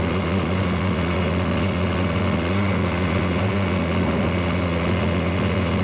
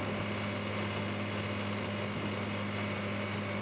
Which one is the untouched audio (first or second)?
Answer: second